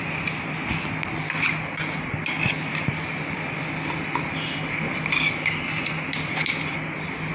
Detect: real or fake real